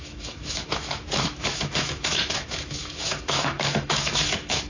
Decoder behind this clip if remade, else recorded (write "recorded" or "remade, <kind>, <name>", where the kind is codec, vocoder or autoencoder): remade, autoencoder, DAC-VAE